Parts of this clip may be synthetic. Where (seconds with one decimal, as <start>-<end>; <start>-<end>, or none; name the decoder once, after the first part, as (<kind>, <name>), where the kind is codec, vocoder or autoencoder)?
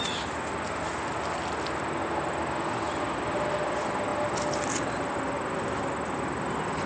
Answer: none